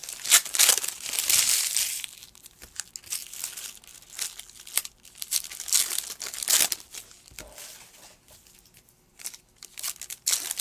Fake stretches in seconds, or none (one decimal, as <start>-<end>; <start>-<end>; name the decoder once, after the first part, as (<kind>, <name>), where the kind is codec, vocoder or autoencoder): none